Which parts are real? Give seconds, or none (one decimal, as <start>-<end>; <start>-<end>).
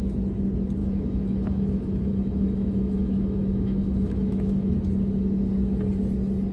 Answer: 0.0-0.8; 4.7-6.5